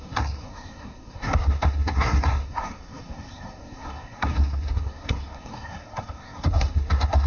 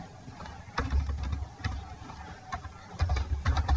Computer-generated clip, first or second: first